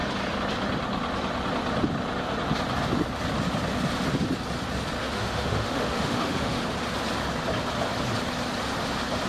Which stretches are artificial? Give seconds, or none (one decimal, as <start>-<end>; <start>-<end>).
5.0-6.6